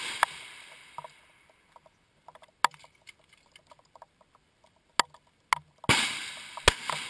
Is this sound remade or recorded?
recorded